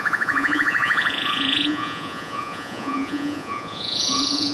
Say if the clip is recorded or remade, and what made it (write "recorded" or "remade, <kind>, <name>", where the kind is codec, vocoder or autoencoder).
remade, vocoder, Vocos